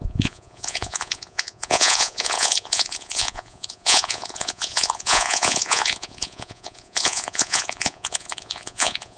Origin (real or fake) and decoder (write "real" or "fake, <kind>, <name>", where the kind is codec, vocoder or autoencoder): fake, vocoder, Vocos